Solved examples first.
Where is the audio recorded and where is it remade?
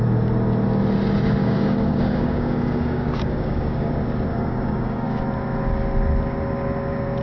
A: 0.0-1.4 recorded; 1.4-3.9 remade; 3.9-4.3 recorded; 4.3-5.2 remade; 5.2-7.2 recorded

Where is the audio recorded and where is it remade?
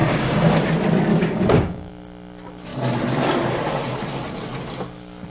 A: 0.0-0.6 remade; 0.6-1.1 recorded; 1.1-1.9 remade; 1.9-5.3 recorded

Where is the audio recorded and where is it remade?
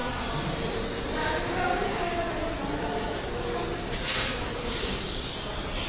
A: 0.0-1.2 recorded; 1.2-2.3 remade; 2.3-4.6 recorded; 4.6-5.3 remade; 5.3-5.9 recorded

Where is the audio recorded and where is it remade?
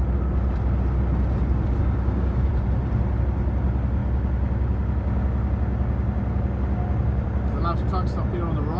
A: 0.0-1.8 recorded; 1.8-2.5 remade; 2.5-8.8 recorded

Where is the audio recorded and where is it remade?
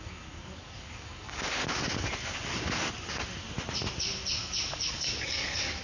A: 0.0-1.6 remade; 1.6-4.9 recorded; 4.9-5.8 remade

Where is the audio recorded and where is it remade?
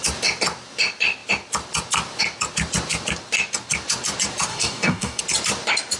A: 0.0-4.5 recorded; 4.5-5.2 remade; 5.2-6.0 recorded